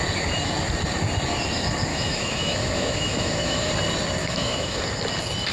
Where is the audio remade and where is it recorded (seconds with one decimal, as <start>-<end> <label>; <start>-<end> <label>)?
0.0-1.9 recorded; 1.9-3.7 remade; 3.7-4.2 recorded; 4.2-4.8 remade; 4.8-5.5 recorded